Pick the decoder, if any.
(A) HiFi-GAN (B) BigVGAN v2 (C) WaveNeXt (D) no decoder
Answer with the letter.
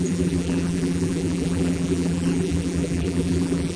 B